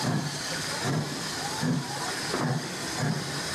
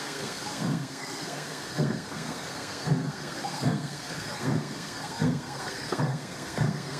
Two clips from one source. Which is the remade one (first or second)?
second